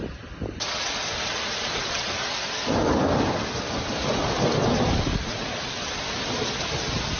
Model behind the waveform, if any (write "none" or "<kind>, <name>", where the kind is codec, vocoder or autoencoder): vocoder, BigVGAN v2